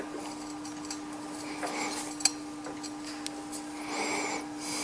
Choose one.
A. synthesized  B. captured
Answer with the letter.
B